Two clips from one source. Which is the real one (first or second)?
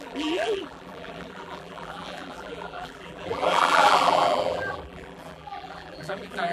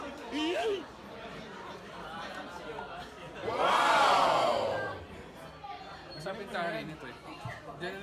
second